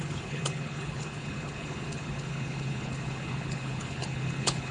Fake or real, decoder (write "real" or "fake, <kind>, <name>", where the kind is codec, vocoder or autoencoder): fake, codec, HILCodec